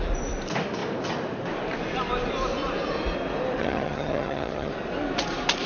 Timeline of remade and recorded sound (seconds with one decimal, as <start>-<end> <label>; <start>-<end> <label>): 0.0-3.6 recorded; 3.6-4.7 remade; 4.7-5.7 recorded

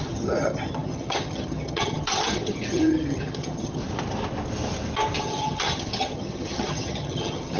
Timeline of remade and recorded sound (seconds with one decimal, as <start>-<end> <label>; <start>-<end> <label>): 0.0-3.8 remade; 3.8-5.2 recorded; 5.2-7.6 remade

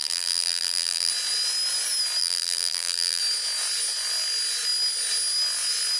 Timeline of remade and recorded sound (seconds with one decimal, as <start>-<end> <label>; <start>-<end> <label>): 0.0-1.1 remade; 1.1-2.2 recorded; 2.2-3.2 remade; 3.2-6.0 recorded

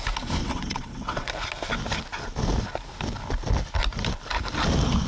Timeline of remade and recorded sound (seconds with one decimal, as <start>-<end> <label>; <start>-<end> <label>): 0.0-0.4 recorded; 0.4-1.3 remade; 1.3-5.1 recorded